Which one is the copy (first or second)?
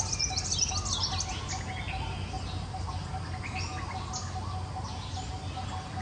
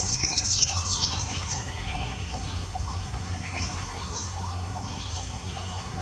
second